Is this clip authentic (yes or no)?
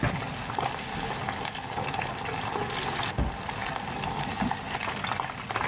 yes